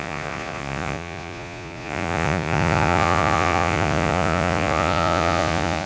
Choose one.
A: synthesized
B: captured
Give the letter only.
A